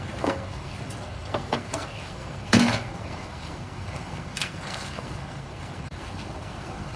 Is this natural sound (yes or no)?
no